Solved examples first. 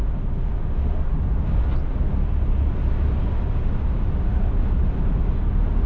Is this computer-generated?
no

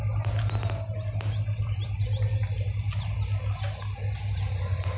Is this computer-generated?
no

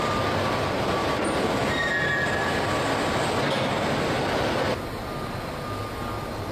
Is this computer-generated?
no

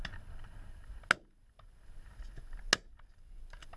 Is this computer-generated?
no